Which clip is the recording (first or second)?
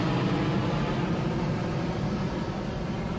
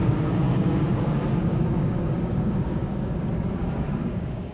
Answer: first